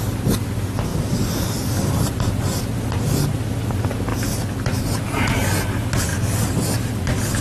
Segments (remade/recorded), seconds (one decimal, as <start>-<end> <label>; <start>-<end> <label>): 0.0-0.9 recorded; 0.9-2.6 remade; 2.6-6.1 recorded; 6.1-7.4 remade